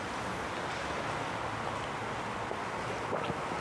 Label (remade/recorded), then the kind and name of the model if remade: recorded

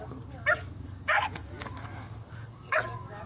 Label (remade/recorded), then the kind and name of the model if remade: remade, codec, DAC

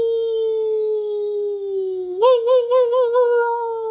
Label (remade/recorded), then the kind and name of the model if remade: remade, codec, DAC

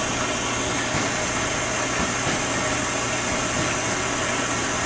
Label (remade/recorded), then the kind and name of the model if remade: recorded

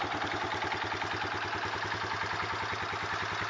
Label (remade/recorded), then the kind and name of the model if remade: recorded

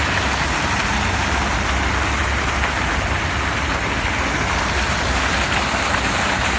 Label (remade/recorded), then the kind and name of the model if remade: recorded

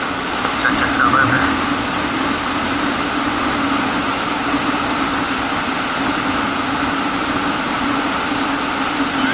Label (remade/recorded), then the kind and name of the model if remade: recorded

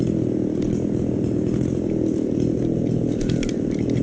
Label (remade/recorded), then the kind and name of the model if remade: recorded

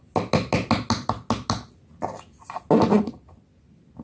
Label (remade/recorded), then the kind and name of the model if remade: recorded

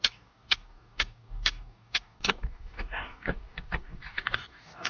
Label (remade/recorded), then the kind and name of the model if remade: remade, codec, DAC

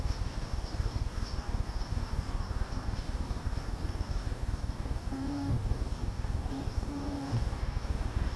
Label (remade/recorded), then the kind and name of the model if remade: remade, codec, DAC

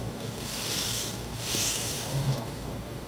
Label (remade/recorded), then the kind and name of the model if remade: remade, codec, DAC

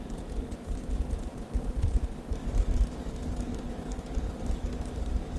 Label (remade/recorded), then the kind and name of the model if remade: remade, codec, DAC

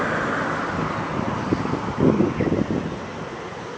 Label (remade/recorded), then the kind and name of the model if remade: recorded